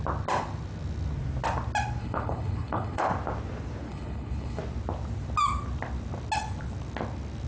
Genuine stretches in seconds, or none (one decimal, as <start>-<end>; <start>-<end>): 0.0-2.0; 3.0-3.9; 4.6-7.5